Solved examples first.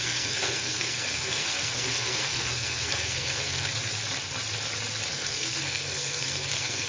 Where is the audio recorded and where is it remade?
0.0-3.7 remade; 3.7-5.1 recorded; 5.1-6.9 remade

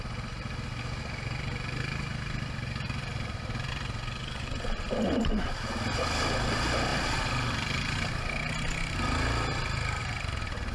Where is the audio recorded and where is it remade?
0.0-2.1 recorded; 2.1-3.7 remade; 3.7-10.7 recorded

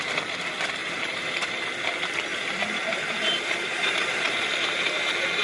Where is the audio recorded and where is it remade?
0.0-0.8 recorded; 0.8-1.5 remade; 1.5-2.3 recorded; 2.3-5.0 remade; 5.0-5.4 recorded

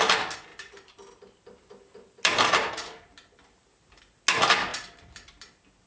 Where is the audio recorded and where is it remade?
0.0-0.5 recorded; 0.5-4.0 remade; 4.0-4.7 recorded; 4.7-5.9 remade

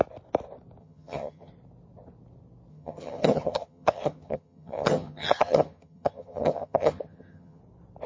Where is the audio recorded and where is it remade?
0.0-0.8 recorded; 0.8-1.5 remade; 1.5-2.7 recorded; 2.7-7.6 remade; 7.6-8.1 recorded

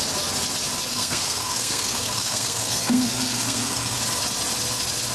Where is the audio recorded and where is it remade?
0.0-0.9 recorded; 0.9-4.0 remade; 4.0-5.1 recorded

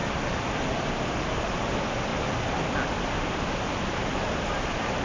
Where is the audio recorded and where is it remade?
0.0-1.4 remade; 1.4-2.1 recorded; 2.1-4.1 remade; 4.1-5.0 recorded